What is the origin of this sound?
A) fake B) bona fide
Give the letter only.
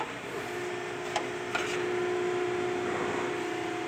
A